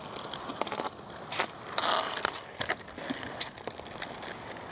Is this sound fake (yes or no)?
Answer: no